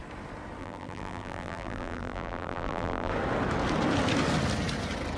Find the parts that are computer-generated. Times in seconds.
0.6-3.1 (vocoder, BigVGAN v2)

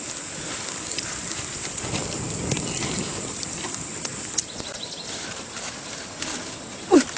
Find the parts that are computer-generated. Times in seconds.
0.0-2.0 (vocoder, BigVGAN v2); 3.4-4.1; 5.1-7.2

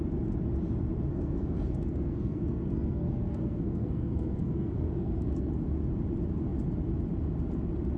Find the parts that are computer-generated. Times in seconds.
1.1-5.5 (codec, SNAC)

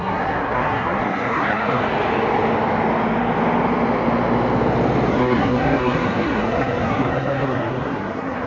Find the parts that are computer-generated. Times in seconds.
0.0-1.8 (codec, SNAC); 5.1-8.5

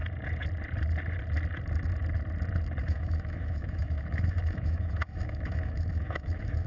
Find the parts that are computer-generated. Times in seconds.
2.8-6.7 (autoencoder, DAC-VAE)

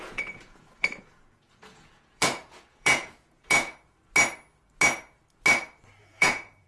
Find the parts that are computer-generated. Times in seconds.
0.0-3.7 (vocoder, Vocos); 6.0-6.7

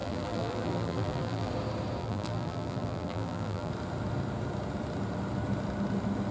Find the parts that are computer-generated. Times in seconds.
0.0-1.5 (vocoder, BigVGAN v2); 2.0-3.7

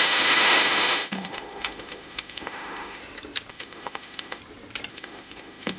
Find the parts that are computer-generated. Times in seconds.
0.0-3.0 (autoencoder, DAC-VAE); 3.5-4.4; 4.9-5.8